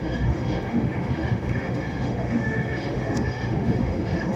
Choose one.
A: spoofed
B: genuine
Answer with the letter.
A